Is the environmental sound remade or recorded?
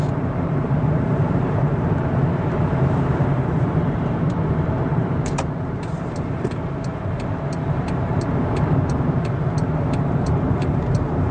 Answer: remade